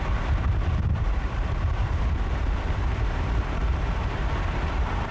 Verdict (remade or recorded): remade